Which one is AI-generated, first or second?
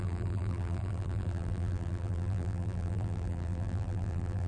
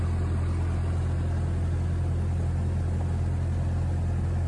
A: first